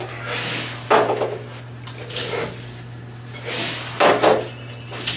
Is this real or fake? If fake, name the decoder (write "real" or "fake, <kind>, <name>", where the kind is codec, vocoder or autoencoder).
real